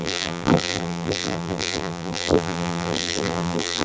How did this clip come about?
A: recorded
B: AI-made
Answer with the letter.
B